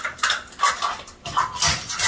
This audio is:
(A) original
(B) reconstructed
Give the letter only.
A